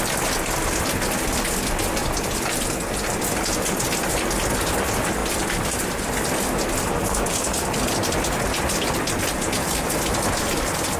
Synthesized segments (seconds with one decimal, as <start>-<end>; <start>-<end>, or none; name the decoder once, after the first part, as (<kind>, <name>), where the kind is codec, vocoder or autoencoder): none